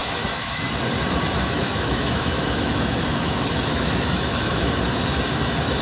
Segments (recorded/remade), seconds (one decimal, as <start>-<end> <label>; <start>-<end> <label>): 0.0-0.6 remade; 0.6-1.3 recorded; 1.3-4.8 remade; 4.8-5.8 recorded